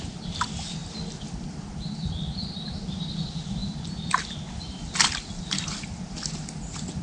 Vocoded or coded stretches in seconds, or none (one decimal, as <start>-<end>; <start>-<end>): none